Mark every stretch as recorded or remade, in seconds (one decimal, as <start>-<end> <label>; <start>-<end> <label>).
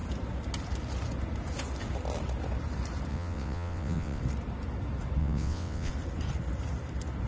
0.0-3.1 recorded; 3.1-4.2 remade; 4.2-5.2 recorded; 5.2-5.9 remade; 5.9-7.3 recorded